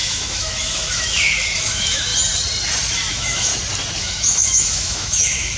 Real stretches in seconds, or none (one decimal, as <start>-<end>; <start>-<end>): 2.1-3.1; 3.5-4.0